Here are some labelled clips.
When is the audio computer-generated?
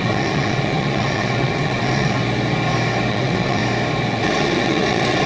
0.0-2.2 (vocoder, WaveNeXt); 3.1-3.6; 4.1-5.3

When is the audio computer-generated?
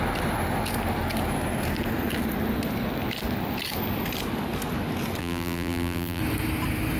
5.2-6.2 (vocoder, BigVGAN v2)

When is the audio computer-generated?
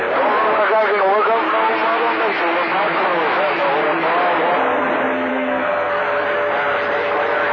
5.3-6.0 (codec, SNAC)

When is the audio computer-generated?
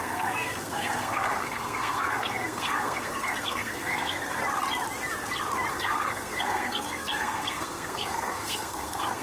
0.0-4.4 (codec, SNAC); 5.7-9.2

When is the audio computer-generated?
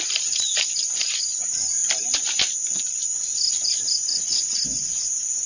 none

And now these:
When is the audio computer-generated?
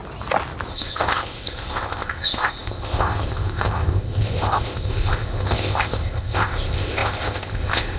0.7-8.0 (codec, ZipCodec)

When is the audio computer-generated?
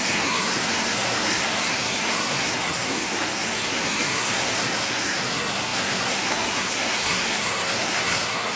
0.0-8.6 (codec, SNAC)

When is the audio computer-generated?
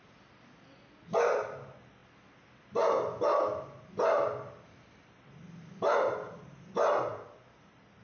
none